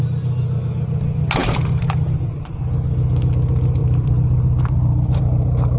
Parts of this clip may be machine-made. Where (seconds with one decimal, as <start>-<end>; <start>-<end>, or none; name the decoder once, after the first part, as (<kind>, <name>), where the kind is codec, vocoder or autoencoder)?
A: 1.4-2.6 (vocoder, BigVGAN v2); 3.8-5.2